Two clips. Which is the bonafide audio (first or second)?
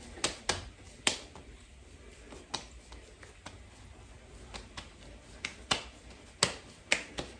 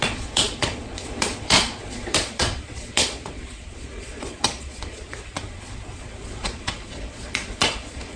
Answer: first